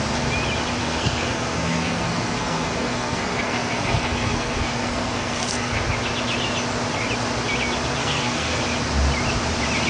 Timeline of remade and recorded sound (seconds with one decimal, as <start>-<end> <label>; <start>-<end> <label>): 0.0-0.8 recorded; 0.8-5.8 remade; 5.8-8.0 recorded; 8.0-8.6 remade; 8.6-9.9 recorded